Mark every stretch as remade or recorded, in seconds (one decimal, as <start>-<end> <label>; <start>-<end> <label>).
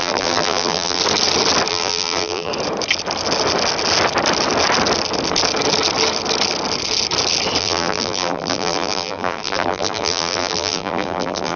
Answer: 0.0-1.0 remade; 1.0-1.7 recorded; 1.7-2.5 remade; 2.5-7.6 recorded; 7.6-11.6 remade